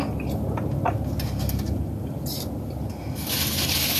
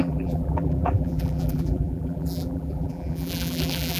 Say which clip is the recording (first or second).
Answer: first